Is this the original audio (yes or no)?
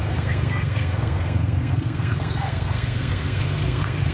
no